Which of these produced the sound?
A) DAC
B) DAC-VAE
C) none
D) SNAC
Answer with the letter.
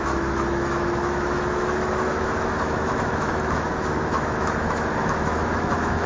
B